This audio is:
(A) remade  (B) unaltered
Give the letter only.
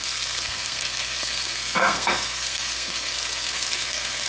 A